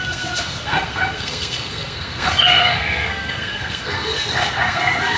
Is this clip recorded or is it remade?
remade